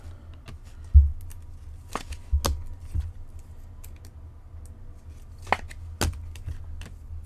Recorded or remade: recorded